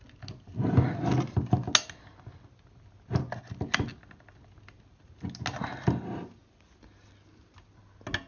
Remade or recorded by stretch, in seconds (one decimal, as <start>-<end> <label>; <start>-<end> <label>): 0.0-8.3 recorded